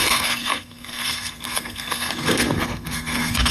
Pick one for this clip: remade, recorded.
remade